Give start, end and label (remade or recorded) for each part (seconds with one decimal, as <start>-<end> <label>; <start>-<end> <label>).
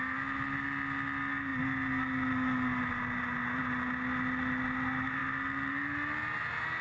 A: 0.0-6.8 recorded